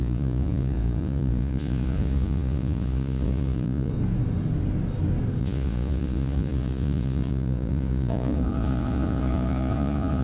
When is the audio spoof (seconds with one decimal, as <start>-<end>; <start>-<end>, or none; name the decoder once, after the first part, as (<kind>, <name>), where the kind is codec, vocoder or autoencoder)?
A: 0.0-3.9 (vocoder, Vocos); 5.4-10.2